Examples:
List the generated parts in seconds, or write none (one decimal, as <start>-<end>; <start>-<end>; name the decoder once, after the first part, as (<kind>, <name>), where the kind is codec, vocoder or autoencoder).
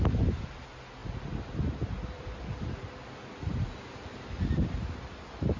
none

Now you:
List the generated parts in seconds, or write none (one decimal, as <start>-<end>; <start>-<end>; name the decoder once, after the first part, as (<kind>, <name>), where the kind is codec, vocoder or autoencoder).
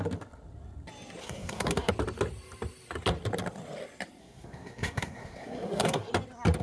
1.2-1.9 (codec, SNAC); 4.2-6.1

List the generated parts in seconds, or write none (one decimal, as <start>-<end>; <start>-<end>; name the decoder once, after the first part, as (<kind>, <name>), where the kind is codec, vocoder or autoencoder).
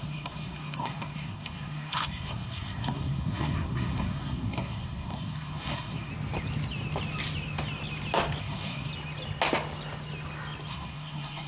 0.0-6.1 (codec, SNAC); 8.4-8.9; 10.7-11.5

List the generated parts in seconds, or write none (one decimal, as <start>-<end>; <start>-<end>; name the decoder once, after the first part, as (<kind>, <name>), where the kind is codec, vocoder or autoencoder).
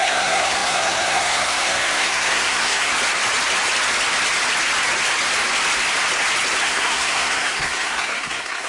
0.0-2.9 (codec, SNAC); 6.6-8.7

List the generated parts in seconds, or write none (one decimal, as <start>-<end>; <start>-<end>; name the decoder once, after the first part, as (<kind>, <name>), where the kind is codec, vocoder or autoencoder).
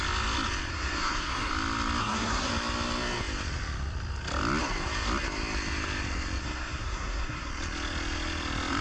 0.7-1.5 (codec, SNAC); 2.0-2.5; 6.4-7.5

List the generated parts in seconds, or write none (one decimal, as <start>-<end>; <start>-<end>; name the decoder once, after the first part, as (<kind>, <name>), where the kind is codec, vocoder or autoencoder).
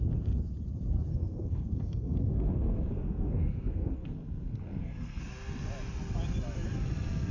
1.1-5.2 (codec, SNAC)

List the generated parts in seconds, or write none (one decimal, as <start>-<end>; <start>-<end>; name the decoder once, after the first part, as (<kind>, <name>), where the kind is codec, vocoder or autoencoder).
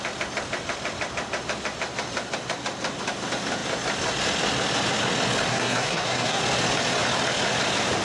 5.5-6.4 (codec, SNAC)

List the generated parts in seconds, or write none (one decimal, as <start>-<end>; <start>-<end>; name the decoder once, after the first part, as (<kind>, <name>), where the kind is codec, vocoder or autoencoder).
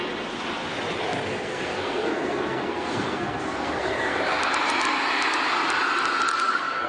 1.3-4.2 (codec, SNAC); 6.3-6.9